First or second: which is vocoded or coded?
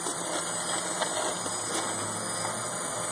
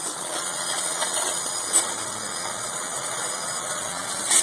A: second